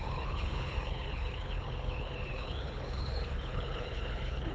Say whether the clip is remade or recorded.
remade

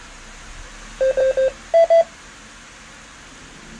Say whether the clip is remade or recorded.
recorded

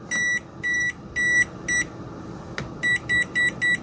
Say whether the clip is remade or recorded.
recorded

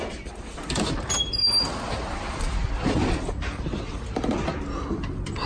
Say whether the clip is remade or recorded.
recorded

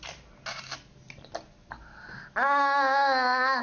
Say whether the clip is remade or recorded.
recorded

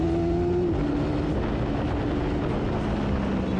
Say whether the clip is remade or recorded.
recorded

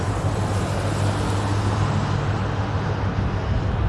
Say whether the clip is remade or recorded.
recorded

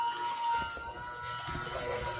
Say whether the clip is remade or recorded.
recorded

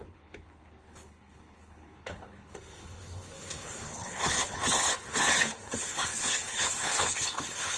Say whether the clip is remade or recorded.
remade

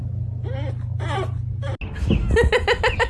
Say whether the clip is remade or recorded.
recorded